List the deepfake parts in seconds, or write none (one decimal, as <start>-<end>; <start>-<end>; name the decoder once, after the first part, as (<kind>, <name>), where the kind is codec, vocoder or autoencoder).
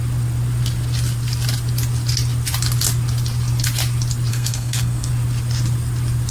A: 4.3-5.1 (codec, SNAC)